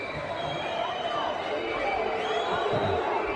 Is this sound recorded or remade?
remade